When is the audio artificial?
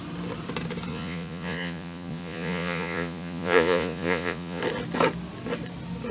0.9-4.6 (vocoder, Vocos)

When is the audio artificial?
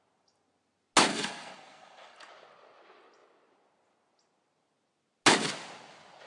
1.1-2.3 (codec, SNAC)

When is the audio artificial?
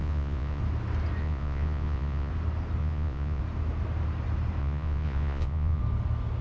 0.0-0.6 (vocoder, Vocos); 1.2-2.3; 2.8-3.4; 4.6-5.8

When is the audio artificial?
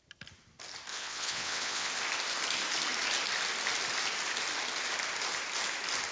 0.9-1.9 (vocoder, WaveNeXt)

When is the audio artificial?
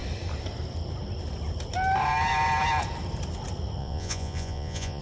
3.8-5.0 (vocoder, Vocos)